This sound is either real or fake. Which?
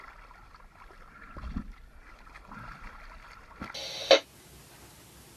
real